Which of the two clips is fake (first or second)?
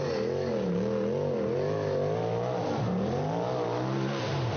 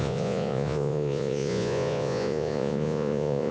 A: second